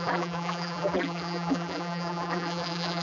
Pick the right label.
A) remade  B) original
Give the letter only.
A